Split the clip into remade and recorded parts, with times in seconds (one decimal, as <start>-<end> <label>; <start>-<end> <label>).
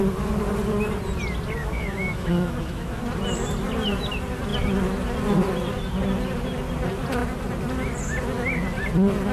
0.0-1.6 recorded; 1.6-3.0 remade; 3.0-9.3 recorded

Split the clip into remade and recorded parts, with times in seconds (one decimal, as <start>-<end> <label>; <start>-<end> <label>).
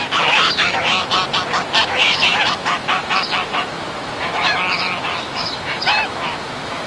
0.0-1.1 remade; 1.1-1.8 recorded; 1.8-6.9 remade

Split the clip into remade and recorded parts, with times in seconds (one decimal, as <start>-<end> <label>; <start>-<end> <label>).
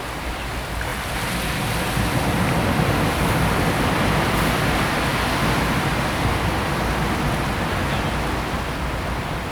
0.0-9.5 recorded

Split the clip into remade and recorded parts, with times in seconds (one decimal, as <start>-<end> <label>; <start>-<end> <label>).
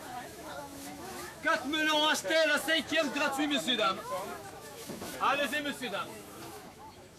0.0-5.1 remade; 5.1-5.8 recorded; 5.8-7.2 remade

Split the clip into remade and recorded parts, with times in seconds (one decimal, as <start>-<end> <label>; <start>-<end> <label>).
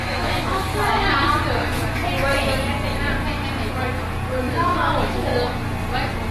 0.0-0.7 remade; 0.7-4.5 recorded; 4.5-5.3 remade; 5.3-6.3 recorded